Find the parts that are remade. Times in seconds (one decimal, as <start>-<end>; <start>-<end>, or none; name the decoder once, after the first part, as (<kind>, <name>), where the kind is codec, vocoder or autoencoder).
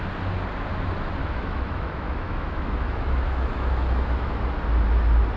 1.2-4.4 (autoencoder, DAC-VAE)